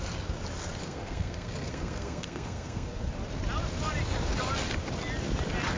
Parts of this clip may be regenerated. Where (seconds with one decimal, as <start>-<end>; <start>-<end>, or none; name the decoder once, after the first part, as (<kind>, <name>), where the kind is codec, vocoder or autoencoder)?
0.8-3.1 (codec, SNAC)